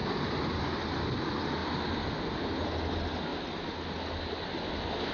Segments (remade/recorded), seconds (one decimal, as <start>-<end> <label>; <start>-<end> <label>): 0.0-5.1 recorded